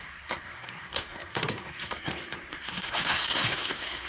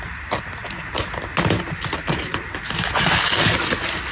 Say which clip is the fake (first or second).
first